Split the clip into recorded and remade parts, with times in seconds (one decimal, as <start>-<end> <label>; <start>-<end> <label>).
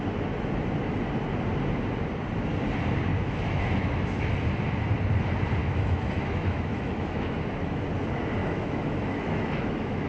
0.0-3.1 recorded; 3.1-4.3 remade; 4.3-5.6 recorded; 5.6-7.8 remade; 7.8-8.4 recorded; 8.4-10.1 remade